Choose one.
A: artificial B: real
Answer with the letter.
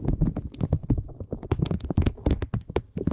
B